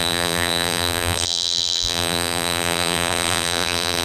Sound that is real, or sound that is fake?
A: fake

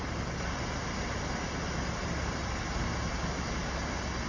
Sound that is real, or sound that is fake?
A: fake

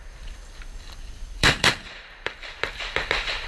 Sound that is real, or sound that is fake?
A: fake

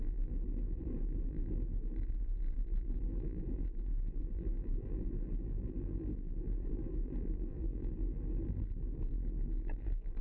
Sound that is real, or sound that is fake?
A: fake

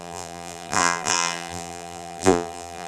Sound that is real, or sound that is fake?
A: fake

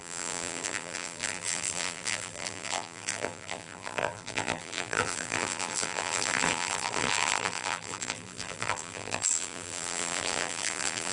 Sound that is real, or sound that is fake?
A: fake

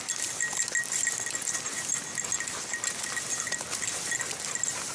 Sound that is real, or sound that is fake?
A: real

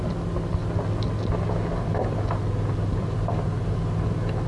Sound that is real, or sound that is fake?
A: real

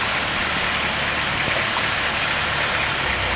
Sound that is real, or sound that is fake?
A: real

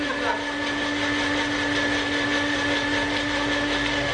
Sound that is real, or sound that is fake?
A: real